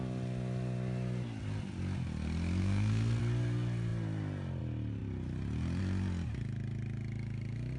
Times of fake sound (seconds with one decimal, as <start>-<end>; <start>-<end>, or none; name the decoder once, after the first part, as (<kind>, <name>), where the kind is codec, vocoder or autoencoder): 2.6-3.2 (codec, SNAC)